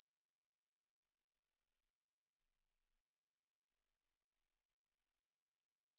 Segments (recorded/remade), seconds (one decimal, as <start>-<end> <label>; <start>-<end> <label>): 0.0-0.9 recorded; 0.9-1.9 remade; 1.9-2.4 recorded; 2.4-3.0 remade; 3.0-3.7 recorded; 3.7-5.2 remade; 5.2-6.0 recorded